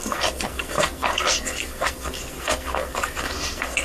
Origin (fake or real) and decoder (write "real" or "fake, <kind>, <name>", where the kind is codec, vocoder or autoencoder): fake, codec, SNAC